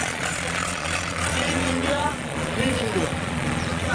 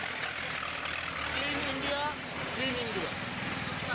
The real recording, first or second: second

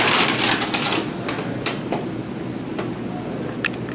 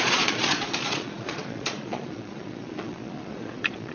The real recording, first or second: first